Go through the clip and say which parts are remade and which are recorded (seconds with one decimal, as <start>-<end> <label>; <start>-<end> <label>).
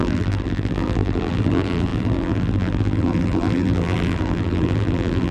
0.0-5.3 remade